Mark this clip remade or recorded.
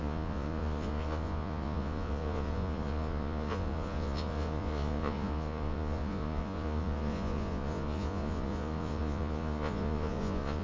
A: remade